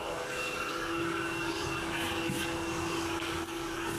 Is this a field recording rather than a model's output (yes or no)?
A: no